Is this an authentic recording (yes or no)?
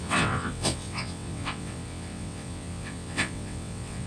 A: no